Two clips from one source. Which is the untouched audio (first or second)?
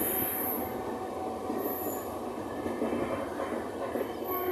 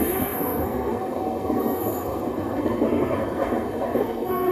first